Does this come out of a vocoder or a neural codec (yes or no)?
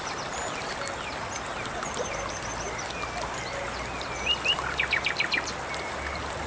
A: no